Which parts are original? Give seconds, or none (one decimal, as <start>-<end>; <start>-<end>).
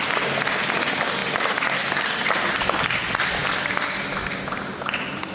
0.0-5.3